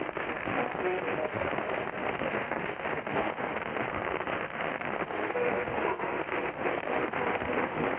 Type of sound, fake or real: fake